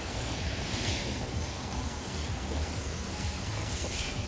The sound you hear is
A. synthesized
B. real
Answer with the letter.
A